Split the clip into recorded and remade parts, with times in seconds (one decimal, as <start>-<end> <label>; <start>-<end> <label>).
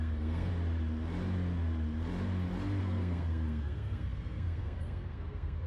0.0-0.5 remade; 0.5-2.8 recorded; 2.8-5.7 remade